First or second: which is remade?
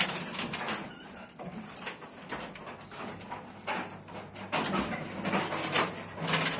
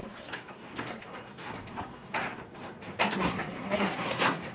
second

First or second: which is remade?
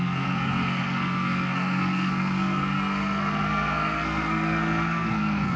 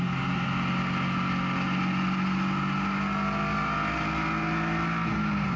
first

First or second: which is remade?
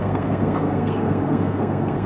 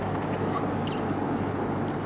first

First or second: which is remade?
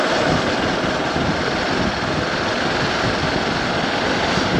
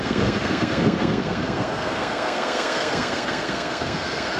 second